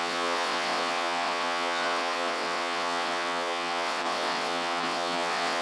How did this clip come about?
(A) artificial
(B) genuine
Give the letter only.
A